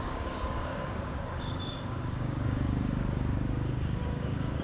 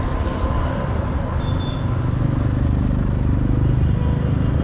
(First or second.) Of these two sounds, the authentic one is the second